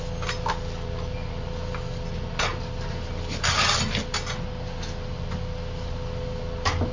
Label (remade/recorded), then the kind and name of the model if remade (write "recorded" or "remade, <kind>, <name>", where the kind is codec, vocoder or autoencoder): recorded